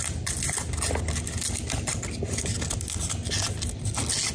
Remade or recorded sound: recorded